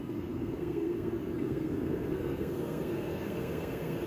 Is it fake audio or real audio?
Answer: fake